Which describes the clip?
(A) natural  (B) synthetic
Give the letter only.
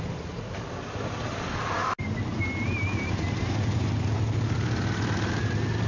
A